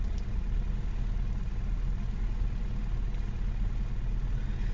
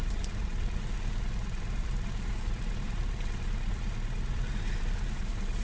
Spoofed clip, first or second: second